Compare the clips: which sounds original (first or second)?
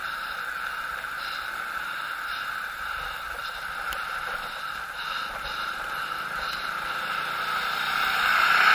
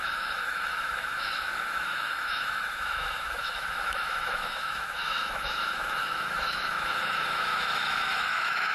first